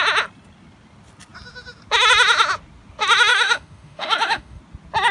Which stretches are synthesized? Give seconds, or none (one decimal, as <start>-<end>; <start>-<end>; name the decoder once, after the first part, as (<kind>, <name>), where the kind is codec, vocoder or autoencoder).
3.3-4.6 (autoencoder, DAC-VAE)